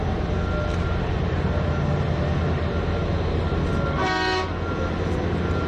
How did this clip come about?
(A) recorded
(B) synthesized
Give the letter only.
A